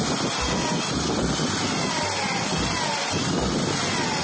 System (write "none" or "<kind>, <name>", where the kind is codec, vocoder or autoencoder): none